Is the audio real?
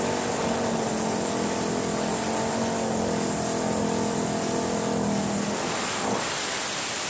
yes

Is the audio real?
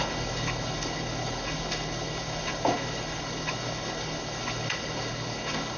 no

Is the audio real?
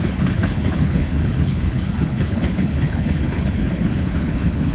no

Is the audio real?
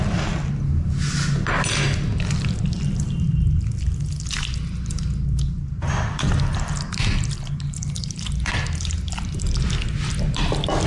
yes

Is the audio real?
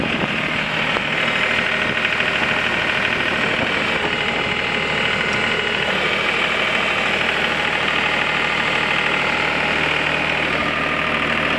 yes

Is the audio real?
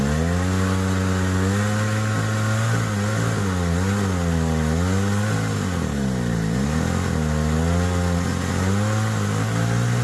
yes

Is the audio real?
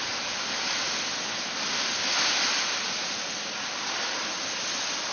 yes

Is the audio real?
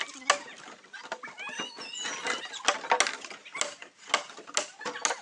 yes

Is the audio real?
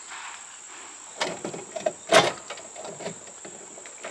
yes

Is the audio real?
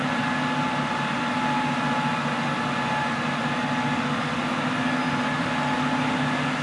yes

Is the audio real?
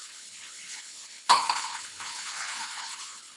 no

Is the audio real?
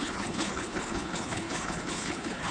no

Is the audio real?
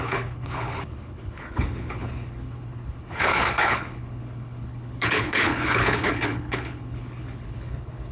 no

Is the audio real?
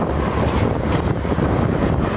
yes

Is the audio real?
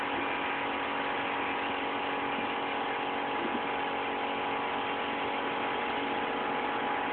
yes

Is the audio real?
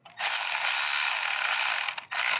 yes